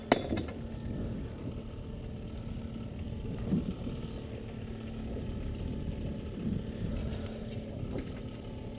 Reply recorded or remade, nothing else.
recorded